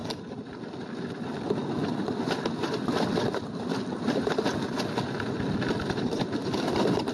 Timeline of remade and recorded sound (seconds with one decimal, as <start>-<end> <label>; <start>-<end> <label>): 0.0-0.5 remade; 0.5-7.1 recorded